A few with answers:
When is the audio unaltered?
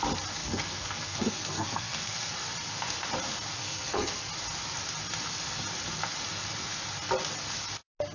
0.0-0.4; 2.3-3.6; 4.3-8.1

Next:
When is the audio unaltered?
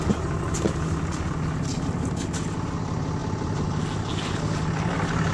0.0-5.3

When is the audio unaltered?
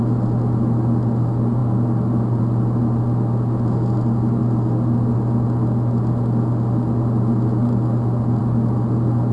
0.0-9.3